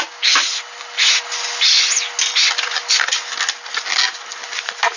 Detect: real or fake real